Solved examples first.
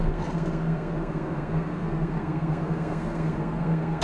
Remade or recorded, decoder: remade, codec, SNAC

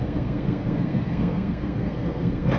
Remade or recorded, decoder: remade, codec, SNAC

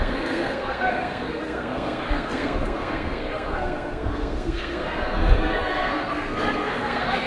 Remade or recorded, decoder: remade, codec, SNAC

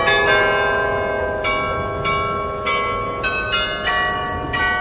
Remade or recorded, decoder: recorded